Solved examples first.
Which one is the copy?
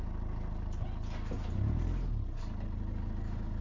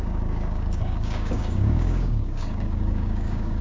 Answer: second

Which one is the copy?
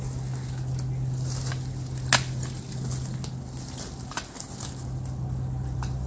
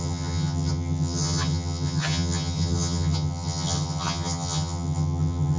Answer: second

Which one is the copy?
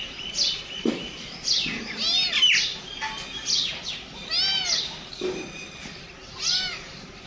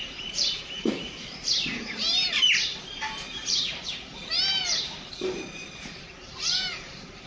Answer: second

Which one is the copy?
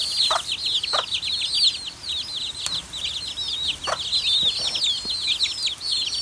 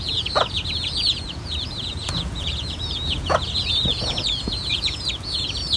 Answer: second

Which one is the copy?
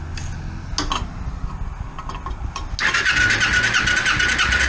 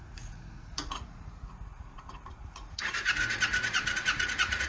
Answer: second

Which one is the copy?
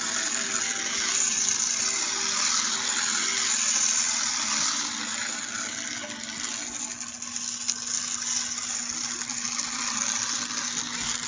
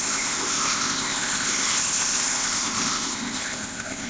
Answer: second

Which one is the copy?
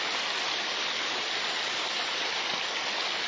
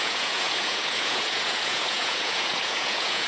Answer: second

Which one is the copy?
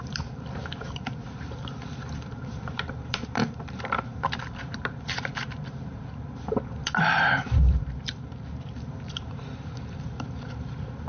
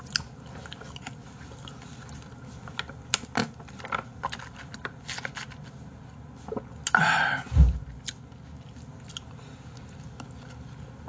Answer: first